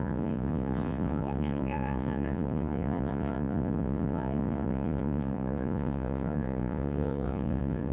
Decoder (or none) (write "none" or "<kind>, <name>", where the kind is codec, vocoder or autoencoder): vocoder, Vocos